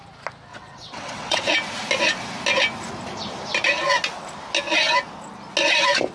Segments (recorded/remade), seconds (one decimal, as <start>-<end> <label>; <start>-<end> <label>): 0.0-0.5 recorded; 0.5-1.5 remade; 1.5-6.1 recorded